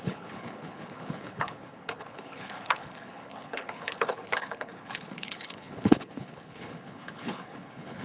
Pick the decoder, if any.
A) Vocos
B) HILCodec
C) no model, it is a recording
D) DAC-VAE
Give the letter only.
B